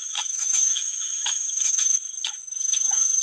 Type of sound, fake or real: fake